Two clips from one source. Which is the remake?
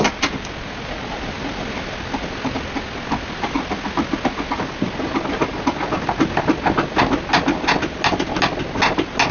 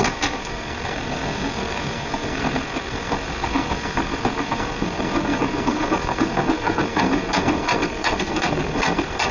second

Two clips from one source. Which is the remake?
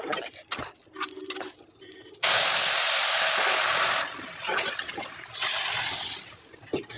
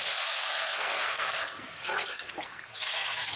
second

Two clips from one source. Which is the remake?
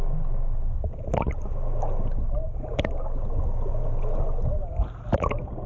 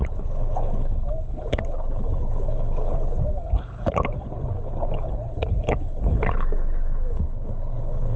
second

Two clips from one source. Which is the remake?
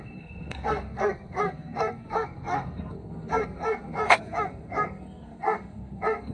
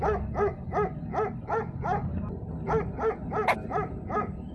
first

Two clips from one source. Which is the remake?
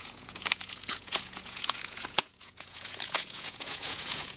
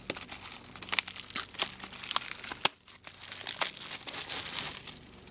first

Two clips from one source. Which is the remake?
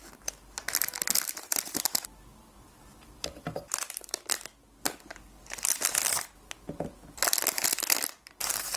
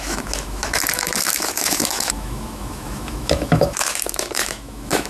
second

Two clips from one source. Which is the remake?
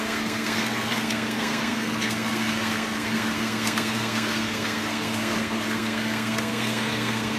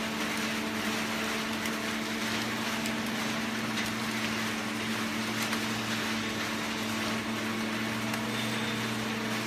first